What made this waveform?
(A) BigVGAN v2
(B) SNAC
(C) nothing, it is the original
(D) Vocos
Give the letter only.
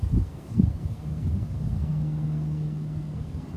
B